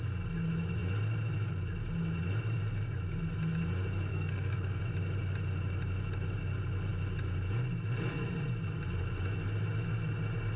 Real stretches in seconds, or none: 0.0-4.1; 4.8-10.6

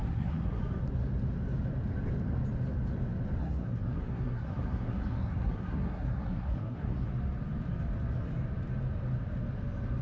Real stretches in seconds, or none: 0.6-3.4; 7.1-10.0

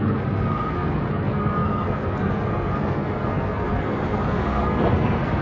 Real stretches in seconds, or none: none

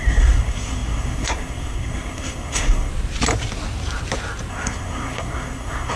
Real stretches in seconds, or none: 2.9-4.5

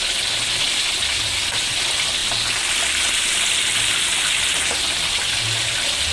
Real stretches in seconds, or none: 0.0-6.1

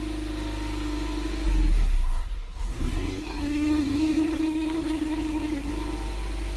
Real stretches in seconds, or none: 0.0-1.7; 5.7-6.6

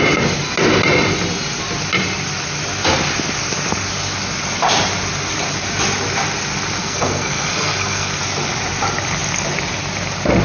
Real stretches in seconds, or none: 0.0-6.8; 8.2-10.4

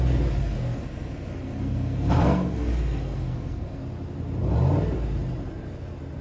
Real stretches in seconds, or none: 0.0-0.4; 3.8-6.2